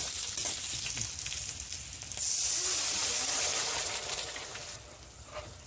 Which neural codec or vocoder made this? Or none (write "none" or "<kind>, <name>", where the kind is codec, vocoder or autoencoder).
none